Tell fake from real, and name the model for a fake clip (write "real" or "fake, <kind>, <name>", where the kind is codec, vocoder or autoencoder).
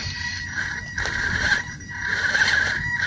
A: fake, vocoder, BigVGAN v2